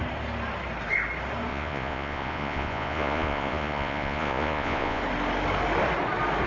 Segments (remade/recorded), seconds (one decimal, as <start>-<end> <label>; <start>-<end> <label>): 0.0-1.5 recorded; 1.5-5.0 remade; 5.0-6.5 recorded